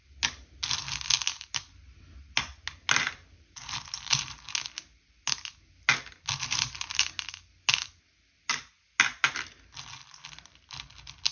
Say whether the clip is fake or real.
real